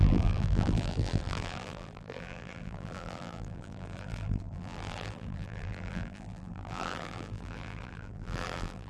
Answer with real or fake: fake